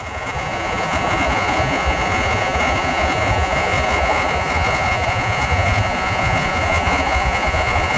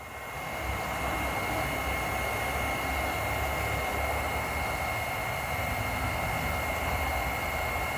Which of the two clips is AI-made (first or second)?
first